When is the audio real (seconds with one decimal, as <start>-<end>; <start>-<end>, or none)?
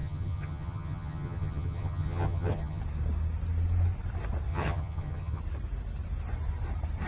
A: 2.8-4.5; 5.4-7.1